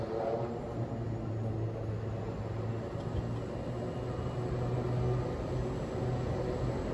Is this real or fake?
real